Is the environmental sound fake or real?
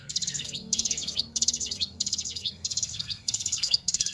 fake